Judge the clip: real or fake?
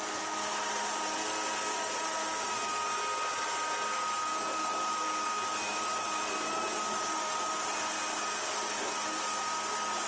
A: real